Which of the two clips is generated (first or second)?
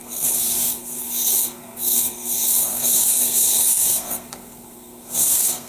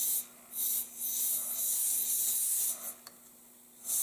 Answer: first